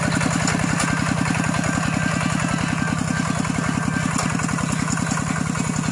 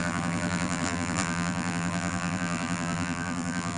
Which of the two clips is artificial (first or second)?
second